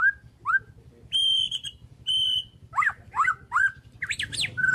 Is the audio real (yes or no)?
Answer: yes